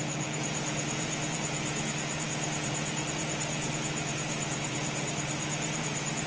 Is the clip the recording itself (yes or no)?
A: no